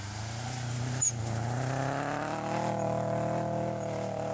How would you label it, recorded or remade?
recorded